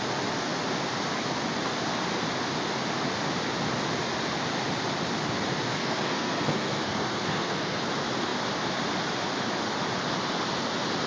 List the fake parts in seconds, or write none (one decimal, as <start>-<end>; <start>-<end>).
5.7-7.8